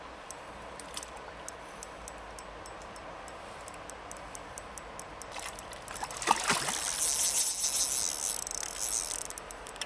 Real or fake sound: real